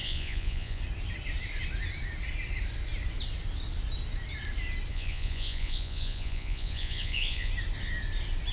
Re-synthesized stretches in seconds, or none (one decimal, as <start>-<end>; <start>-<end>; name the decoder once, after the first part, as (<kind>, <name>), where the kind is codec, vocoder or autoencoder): 0.0-0.8 (vocoder, Vocos); 4.9-7.5